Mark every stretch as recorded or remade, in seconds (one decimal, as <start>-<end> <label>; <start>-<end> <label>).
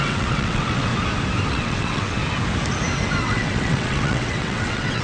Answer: 0.0-0.9 remade; 0.9-1.5 recorded; 1.5-2.2 remade; 2.2-3.2 recorded; 3.2-5.0 remade